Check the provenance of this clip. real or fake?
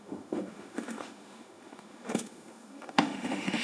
fake